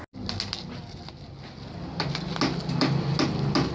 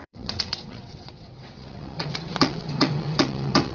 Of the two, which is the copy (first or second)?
second